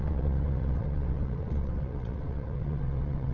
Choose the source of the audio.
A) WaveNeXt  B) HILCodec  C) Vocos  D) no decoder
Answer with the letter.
A